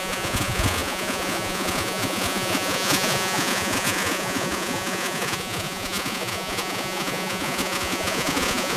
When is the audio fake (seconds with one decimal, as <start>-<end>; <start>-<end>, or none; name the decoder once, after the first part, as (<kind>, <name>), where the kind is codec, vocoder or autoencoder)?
0.0-8.8 (vocoder, Vocos)